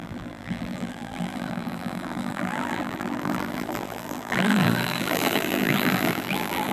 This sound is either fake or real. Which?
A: fake